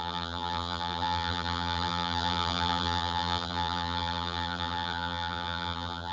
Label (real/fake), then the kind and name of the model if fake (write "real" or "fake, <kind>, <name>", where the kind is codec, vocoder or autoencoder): fake, vocoder, BigVGAN v2